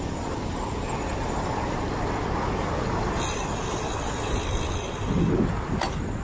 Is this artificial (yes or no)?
no